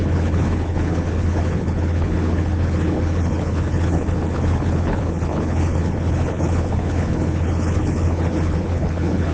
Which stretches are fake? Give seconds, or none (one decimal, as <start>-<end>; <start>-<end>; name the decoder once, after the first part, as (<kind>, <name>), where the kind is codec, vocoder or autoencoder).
0.0-9.3 (codec, HILCodec)